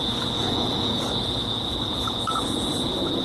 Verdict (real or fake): fake